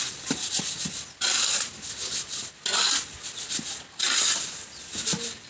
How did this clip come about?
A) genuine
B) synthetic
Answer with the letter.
A